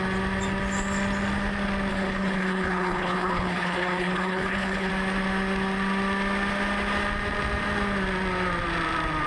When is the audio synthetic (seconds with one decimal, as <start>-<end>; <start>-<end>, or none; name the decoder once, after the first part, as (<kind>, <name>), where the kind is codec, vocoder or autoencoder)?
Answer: 1.9-4.9 (codec, HILCodec)